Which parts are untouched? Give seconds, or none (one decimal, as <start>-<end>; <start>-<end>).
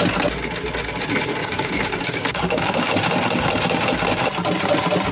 0.0-1.4; 2.9-5.1